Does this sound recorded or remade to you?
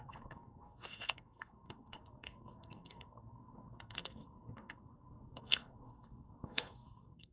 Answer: remade